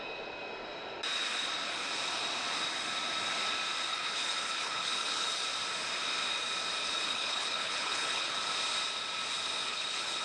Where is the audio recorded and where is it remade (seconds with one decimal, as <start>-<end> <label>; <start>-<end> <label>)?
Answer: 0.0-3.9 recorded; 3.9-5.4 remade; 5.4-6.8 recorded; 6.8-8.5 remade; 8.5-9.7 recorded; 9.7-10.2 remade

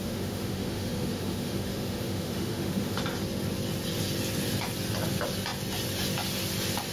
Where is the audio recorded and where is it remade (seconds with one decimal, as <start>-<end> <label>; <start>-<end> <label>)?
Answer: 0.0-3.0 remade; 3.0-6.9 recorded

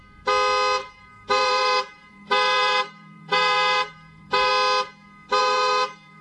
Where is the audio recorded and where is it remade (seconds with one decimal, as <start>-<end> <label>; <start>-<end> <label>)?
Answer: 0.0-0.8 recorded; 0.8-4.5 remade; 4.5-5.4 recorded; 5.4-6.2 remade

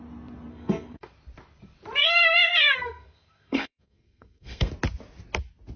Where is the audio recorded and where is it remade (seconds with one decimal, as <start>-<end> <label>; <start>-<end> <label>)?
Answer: 0.0-0.5 recorded; 0.5-1.1 remade; 1.1-2.0 recorded; 2.0-4.7 remade; 4.7-5.8 recorded

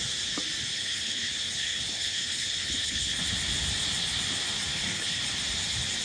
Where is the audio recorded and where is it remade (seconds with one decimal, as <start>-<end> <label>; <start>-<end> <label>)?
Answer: 0.0-0.7 recorded; 0.7-3.2 remade; 3.2-4.7 recorded; 4.7-5.2 remade; 5.2-6.0 recorded